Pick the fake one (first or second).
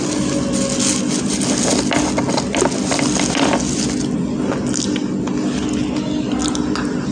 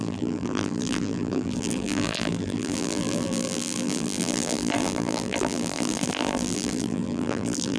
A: second